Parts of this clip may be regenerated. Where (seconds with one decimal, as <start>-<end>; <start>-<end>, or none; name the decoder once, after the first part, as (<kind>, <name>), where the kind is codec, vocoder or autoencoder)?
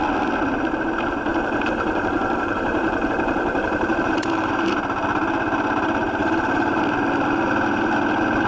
1.3-4.5 (vocoder, BigVGAN v2); 6.2-6.8